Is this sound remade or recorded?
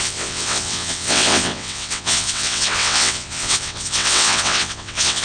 remade